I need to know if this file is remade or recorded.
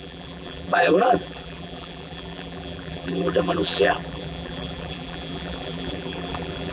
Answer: remade